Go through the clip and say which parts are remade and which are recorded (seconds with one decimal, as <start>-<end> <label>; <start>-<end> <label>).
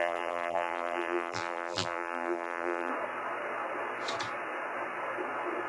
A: 0.0-2.9 remade; 2.9-5.7 recorded